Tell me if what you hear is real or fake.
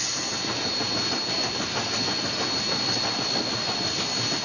real